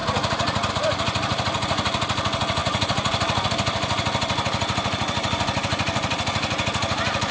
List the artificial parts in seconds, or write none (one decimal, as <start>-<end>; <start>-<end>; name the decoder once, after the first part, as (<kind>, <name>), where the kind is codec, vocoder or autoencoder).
0.7-2.6 (vocoder, BigVGAN v2); 3.5-7.3

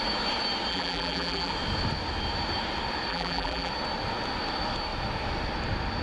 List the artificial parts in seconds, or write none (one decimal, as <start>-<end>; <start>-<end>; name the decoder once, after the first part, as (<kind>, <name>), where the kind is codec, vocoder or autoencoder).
0.7-1.5 (vocoder, BigVGAN v2); 3.1-3.7

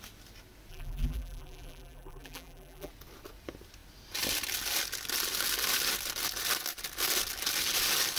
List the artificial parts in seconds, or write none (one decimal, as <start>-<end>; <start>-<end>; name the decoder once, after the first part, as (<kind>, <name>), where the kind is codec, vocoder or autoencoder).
0.7-2.9 (vocoder, BigVGAN v2)

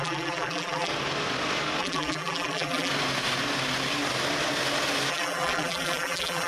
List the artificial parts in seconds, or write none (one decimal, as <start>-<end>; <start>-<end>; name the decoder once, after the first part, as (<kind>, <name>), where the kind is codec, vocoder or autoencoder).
0.0-0.9 (vocoder, BigVGAN v2); 1.8-2.9; 5.1-6.5